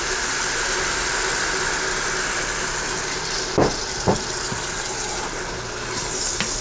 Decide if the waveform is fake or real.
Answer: real